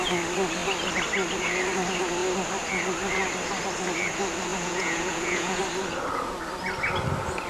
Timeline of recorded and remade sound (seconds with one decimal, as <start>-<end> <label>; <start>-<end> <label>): 0.0-4.5 recorded; 4.5-5.6 remade; 5.6-7.5 recorded